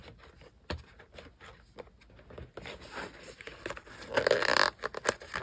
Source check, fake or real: real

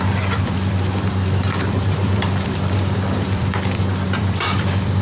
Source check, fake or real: fake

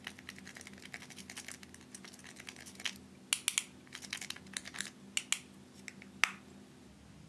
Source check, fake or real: real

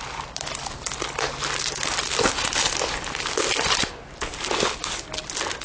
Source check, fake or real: real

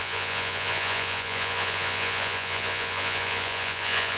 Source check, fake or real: fake